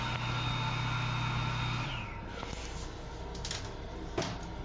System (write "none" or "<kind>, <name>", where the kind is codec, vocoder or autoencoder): none